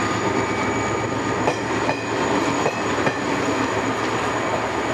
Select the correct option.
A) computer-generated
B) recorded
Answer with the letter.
B